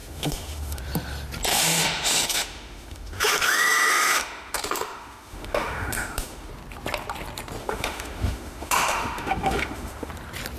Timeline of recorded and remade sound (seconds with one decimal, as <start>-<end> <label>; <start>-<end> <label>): 0.0-0.8 remade; 0.8-1.5 recorded; 1.5-6.5 remade; 6.5-7.6 recorded; 7.6-10.1 remade; 10.1-10.6 recorded